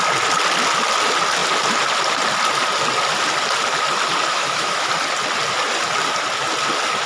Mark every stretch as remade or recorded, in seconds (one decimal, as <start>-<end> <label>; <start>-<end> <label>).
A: 0.0-4.3 recorded; 4.3-4.9 remade; 4.9-7.1 recorded